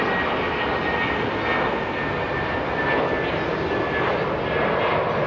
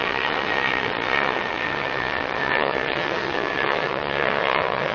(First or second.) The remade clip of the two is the second